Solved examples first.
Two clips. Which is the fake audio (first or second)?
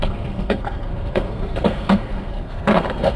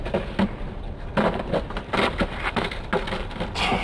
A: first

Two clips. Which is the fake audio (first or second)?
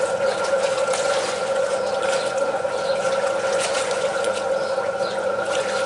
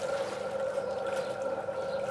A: first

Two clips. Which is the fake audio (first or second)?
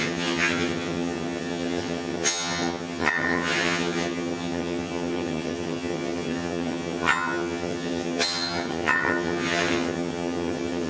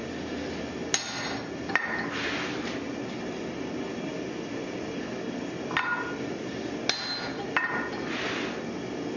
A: first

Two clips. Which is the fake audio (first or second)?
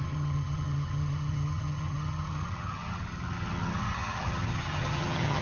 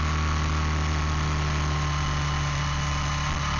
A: first